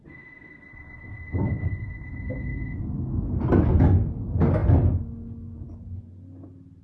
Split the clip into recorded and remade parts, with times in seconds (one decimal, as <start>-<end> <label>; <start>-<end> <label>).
0.0-2.5 recorded; 2.5-3.3 remade; 3.3-6.8 recorded